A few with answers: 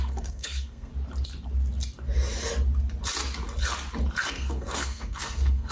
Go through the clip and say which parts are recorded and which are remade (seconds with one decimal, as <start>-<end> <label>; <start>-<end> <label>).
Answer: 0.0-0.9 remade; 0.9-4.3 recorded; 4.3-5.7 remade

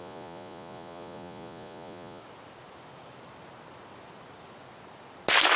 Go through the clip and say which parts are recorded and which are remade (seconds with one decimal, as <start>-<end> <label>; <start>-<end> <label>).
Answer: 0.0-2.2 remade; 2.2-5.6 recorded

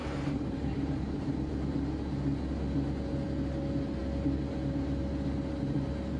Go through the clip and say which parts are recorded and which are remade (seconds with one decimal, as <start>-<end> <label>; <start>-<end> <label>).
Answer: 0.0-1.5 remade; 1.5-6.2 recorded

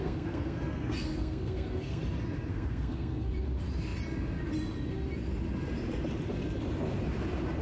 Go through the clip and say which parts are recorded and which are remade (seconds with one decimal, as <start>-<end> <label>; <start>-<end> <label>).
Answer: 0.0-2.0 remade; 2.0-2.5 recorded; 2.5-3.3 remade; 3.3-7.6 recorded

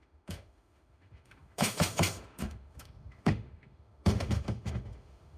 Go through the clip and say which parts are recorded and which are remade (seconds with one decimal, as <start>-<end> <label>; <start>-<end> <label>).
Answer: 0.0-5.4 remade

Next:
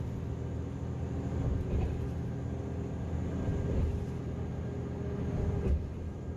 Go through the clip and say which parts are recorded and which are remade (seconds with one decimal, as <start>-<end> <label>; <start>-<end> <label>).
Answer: 0.0-6.4 recorded